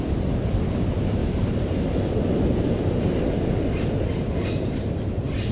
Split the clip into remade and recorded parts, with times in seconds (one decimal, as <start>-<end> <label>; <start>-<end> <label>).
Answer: 0.0-1.2 recorded; 1.2-3.2 remade; 3.2-5.5 recorded